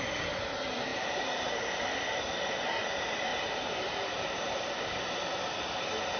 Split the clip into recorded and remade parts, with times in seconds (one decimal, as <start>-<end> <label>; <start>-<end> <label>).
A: 0.0-0.9 recorded; 0.9-1.7 remade; 1.7-3.3 recorded; 3.3-4.7 remade; 4.7-6.2 recorded